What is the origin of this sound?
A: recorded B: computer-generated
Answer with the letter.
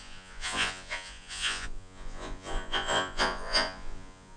B